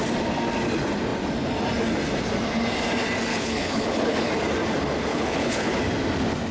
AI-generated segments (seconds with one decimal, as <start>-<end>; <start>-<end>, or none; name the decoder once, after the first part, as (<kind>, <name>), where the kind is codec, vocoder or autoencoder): 3.3-4.3 (codec, HILCodec); 5.1-5.8